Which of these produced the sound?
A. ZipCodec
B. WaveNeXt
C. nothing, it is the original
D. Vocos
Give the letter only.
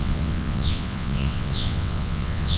B